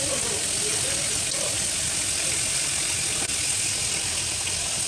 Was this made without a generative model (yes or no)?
yes